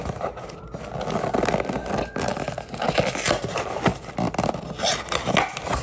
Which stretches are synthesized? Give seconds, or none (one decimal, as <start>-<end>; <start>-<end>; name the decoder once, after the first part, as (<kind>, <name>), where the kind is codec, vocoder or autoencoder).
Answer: none